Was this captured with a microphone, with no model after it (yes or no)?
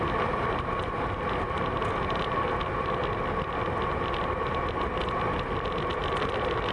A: yes